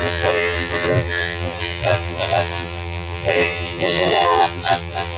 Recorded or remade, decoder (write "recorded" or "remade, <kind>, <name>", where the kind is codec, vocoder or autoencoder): remade, vocoder, BigVGAN v2